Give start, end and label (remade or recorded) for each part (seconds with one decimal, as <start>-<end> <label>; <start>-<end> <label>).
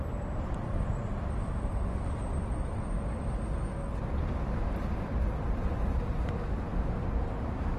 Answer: 0.0-7.8 recorded